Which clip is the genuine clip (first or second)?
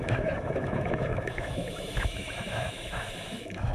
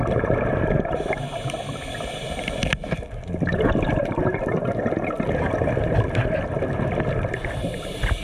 second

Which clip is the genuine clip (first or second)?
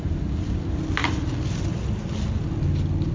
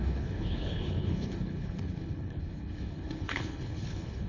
first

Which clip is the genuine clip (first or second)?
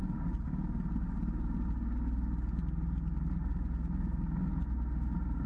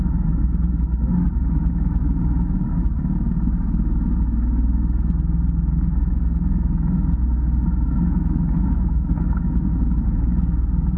first